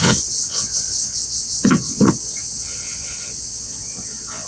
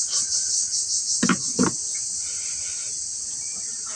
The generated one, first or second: first